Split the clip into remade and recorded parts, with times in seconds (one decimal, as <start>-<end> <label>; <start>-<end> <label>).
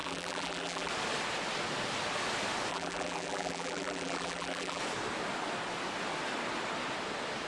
0.0-0.9 remade; 0.9-2.7 recorded; 2.7-4.8 remade; 4.8-7.5 recorded